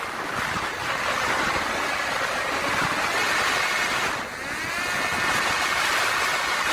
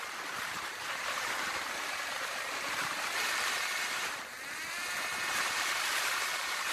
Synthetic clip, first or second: second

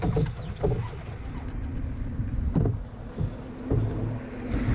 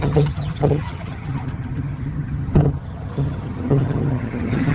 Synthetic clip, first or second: second